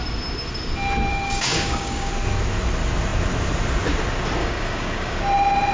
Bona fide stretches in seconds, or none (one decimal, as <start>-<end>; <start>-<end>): 0.0-1.1; 2.1-4.4; 5.2-5.7